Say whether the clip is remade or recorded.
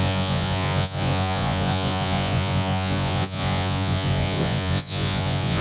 remade